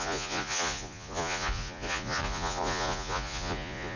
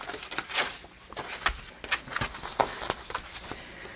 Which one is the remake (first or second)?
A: first